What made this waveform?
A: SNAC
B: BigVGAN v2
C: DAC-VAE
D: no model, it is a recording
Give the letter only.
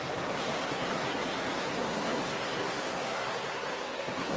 A